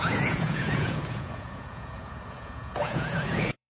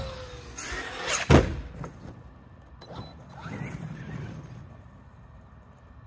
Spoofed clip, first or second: first